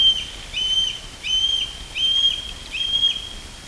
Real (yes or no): yes